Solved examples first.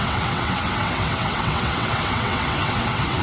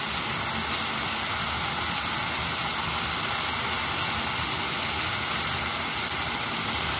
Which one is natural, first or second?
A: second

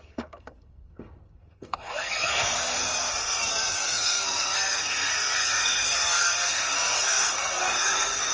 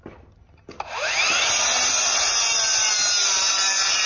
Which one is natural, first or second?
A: second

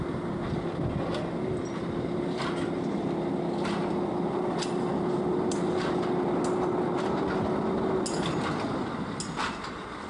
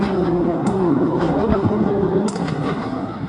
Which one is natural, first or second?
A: first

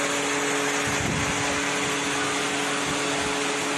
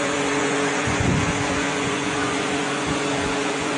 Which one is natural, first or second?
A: first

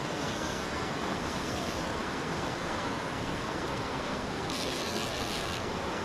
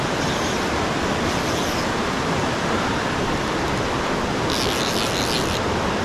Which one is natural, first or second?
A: second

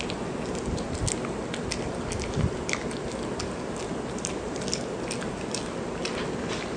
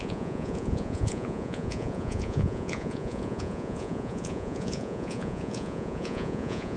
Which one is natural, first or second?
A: first